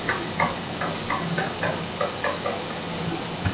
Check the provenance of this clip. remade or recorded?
recorded